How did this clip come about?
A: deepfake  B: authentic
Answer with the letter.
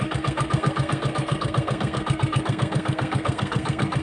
A